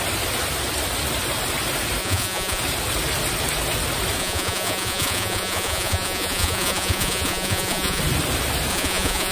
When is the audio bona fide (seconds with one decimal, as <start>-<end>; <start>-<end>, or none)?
0.0-2.0; 2.6-4.2; 8.0-8.7